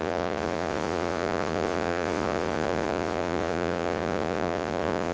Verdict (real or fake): fake